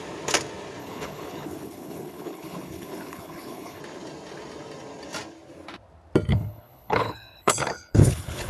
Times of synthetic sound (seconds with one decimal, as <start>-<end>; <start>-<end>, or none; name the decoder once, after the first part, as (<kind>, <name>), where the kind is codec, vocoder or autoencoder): 0.8-3.8 (codec, HILCodec); 6.3-8.5